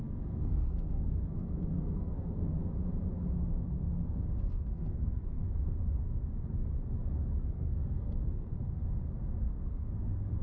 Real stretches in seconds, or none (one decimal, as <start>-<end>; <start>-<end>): 2.6-4.5; 5.4-7.4; 8.5-9.4